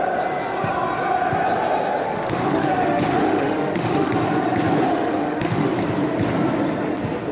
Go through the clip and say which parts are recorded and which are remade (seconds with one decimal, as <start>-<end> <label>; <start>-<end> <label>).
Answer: 0.0-2.0 recorded; 2.0-4.1 remade; 4.1-4.9 recorded; 4.9-5.7 remade; 5.7-7.3 recorded